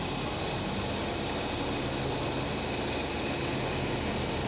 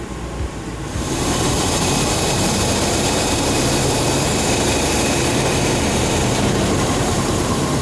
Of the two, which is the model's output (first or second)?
second